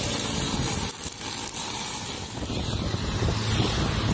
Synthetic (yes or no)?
no